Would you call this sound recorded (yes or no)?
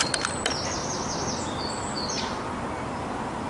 yes